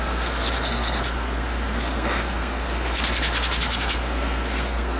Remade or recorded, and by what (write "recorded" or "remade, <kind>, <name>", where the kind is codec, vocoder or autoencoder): remade, codec, SNAC